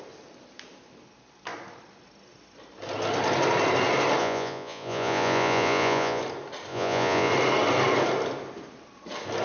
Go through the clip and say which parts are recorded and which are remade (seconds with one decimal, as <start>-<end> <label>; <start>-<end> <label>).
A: 0.0-4.2 recorded; 4.2-6.2 remade; 6.2-6.7 recorded; 6.7-7.3 remade; 7.3-9.4 recorded